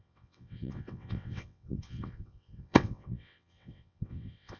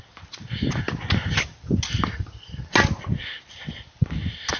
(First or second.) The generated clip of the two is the first